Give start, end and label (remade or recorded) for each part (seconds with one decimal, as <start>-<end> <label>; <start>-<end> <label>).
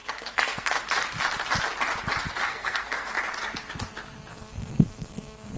0.0-0.8 remade; 0.8-2.5 recorded; 2.5-3.1 remade; 3.1-4.3 recorded; 4.3-5.6 remade